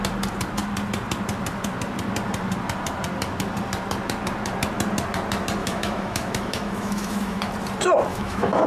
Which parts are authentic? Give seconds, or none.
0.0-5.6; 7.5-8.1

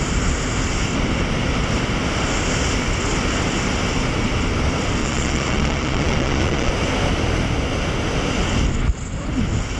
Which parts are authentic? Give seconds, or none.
0.0-5.0; 6.7-9.8

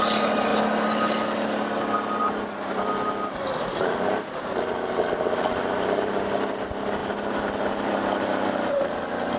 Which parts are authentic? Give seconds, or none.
0.0-9.4

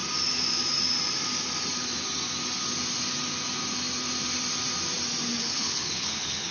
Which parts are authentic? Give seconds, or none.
0.0-5.4